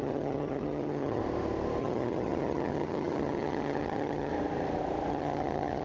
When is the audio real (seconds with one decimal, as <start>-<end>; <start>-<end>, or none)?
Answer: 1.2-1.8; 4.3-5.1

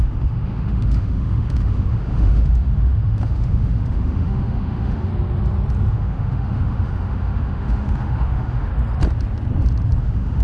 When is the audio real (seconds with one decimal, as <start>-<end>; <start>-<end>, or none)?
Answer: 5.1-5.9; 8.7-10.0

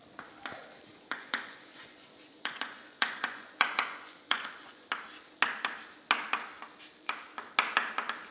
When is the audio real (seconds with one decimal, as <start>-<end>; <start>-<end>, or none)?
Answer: 0.0-0.9; 4.9-8.3